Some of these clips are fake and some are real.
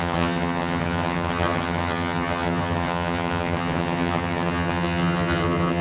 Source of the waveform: fake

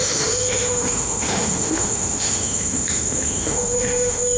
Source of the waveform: fake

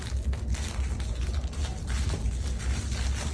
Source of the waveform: real